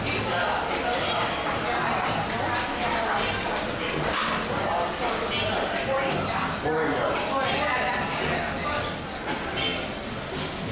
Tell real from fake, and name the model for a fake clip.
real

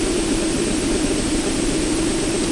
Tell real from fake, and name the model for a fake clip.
real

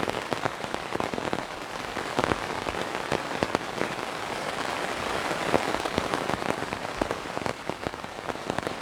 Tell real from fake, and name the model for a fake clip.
fake, codec, DAC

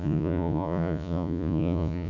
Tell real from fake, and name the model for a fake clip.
fake, vocoder, Vocos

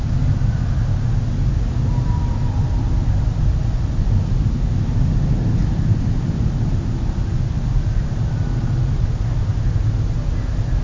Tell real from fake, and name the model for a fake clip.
real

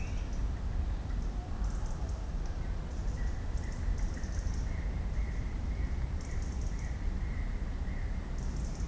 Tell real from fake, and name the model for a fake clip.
real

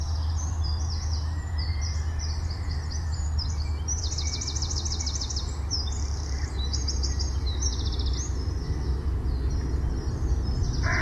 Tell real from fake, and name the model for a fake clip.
real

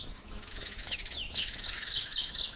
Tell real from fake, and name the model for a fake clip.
fake, autoencoder, DAC-VAE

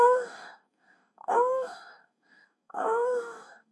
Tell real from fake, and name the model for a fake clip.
fake, codec, DAC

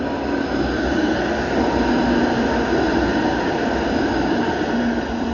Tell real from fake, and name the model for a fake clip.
real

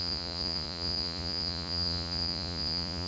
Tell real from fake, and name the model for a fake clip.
fake, vocoder, Vocos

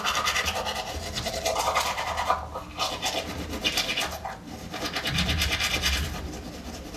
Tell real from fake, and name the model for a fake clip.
real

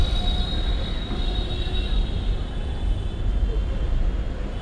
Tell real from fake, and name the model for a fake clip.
real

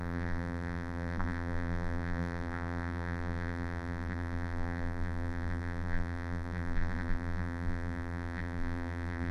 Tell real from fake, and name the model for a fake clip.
fake, vocoder, BigVGAN v2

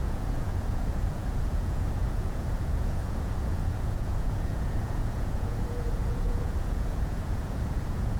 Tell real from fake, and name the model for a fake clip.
fake, vocoder, Vocos